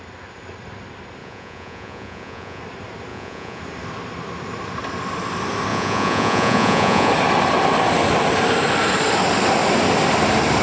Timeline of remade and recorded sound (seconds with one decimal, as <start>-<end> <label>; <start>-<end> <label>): 0.0-1.2 recorded; 1.2-2.6 remade; 2.6-3.1 recorded; 3.1-3.6 remade; 3.6-5.7 recorded; 5.7-7.1 remade; 7.1-10.6 recorded